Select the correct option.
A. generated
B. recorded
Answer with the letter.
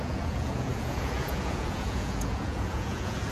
A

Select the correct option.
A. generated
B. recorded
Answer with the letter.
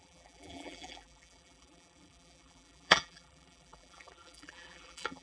A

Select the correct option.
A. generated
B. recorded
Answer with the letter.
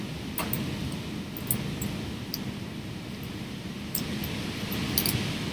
B